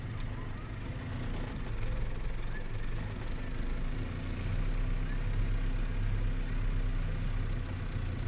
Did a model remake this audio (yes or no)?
no